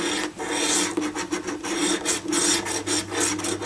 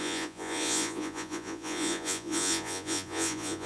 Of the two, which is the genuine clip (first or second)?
first